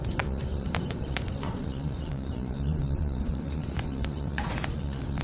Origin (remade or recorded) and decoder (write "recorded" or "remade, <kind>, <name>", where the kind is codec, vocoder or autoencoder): remade, vocoder, Vocos